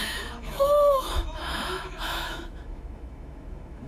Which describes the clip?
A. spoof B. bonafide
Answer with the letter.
A